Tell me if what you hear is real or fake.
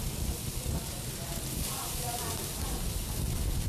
fake